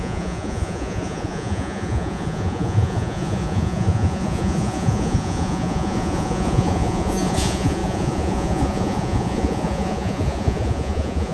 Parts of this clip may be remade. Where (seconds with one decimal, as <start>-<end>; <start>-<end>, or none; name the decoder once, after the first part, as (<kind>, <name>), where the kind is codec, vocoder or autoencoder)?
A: 0.0-11.3 (vocoder, Vocos)